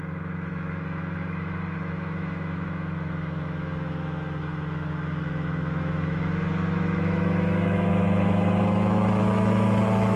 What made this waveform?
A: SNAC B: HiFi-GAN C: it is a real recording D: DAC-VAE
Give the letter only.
D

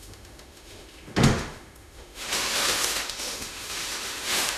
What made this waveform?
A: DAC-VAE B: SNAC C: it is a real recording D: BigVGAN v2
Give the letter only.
A